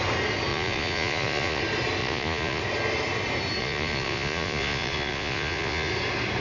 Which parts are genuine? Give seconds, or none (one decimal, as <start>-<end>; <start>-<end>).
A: 0.0-0.5; 1.6-2.0; 2.6-3.6; 5.9-6.4